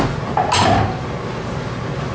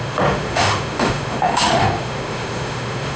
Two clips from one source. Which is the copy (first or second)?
second